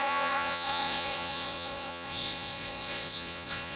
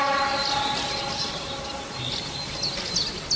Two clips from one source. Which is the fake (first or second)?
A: first